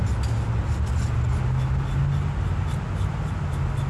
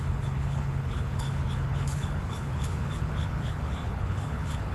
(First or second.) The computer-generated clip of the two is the second